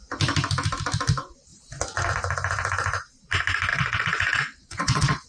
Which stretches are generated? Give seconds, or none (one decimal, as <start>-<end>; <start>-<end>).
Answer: 3.7-5.3